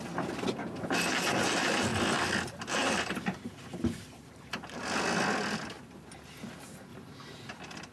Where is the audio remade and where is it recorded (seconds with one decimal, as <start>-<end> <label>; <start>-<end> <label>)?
0.0-1.9 recorded; 1.9-4.5 remade; 4.5-6.9 recorded; 6.9-7.5 remade; 7.5-7.9 recorded